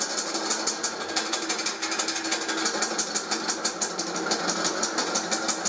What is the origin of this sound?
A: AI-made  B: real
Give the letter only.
B